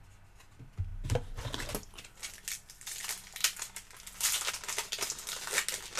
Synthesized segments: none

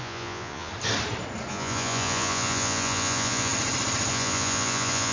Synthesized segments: 0.0-0.7 (vocoder, Vocos); 1.5-3.5; 4.1-5.1

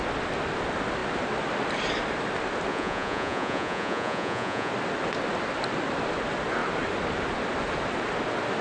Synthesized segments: 2.7-4.7 (vocoder, Vocos)

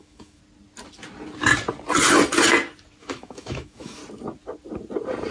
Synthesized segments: 0.0-0.4 (autoencoder, DAC-VAE); 3.0-4.0

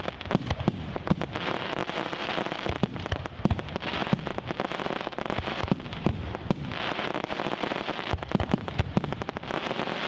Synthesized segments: none

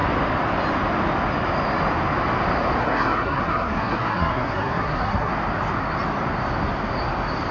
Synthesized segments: 2.8-5.3 (codec, SNAC)